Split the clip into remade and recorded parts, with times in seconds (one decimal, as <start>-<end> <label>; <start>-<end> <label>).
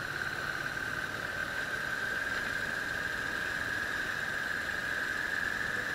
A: 0.0-1.4 recorded; 1.4-2.6 remade; 2.6-5.9 recorded